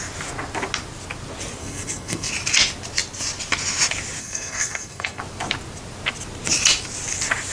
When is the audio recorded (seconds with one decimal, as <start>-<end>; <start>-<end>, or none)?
0.0-1.6; 2.3-4.2; 5.2-7.5